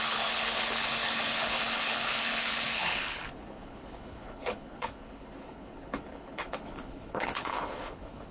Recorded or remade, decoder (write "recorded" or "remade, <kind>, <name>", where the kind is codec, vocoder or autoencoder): remade, codec, HILCodec